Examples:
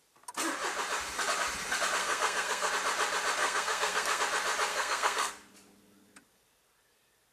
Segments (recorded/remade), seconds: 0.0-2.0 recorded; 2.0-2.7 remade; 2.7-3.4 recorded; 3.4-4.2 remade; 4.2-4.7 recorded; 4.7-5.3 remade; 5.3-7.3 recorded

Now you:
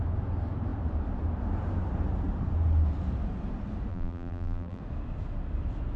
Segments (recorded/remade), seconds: 0.0-3.9 recorded; 3.9-4.8 remade; 4.8-6.0 recorded

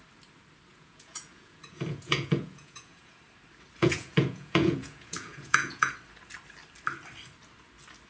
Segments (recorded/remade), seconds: 0.0-0.7 recorded; 0.7-3.2 remade; 3.2-3.8 recorded; 3.8-5.9 remade; 5.9-8.1 recorded

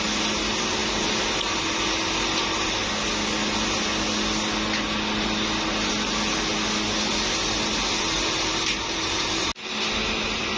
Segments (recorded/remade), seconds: 0.0-8.5 recorded; 8.5-9.5 remade; 9.5-10.6 recorded